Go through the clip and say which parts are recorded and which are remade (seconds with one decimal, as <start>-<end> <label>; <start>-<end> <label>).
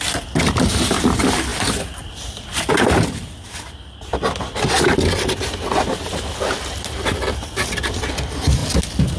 0.0-9.2 recorded